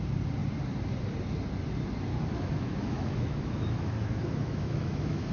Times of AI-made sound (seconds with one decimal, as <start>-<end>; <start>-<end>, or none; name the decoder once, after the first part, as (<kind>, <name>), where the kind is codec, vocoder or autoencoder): 2.1-5.3 (autoencoder, DAC-VAE)